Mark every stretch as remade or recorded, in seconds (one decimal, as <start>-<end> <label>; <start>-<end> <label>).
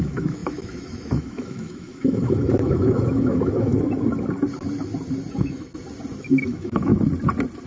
0.0-3.7 remade; 3.7-5.3 recorded; 5.3-5.7 remade; 5.7-6.2 recorded; 6.2-6.9 remade; 6.9-7.7 recorded